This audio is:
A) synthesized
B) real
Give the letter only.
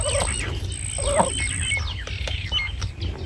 B